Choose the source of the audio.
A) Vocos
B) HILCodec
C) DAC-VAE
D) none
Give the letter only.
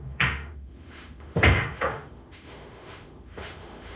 C